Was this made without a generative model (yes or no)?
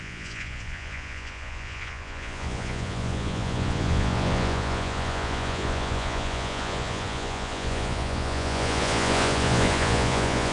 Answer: no